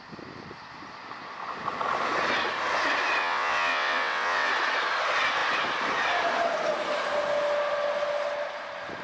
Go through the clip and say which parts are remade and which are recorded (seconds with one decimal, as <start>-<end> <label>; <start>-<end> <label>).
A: 0.0-3.2 recorded; 3.2-4.5 remade; 4.5-9.0 recorded